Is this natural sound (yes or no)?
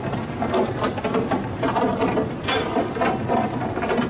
yes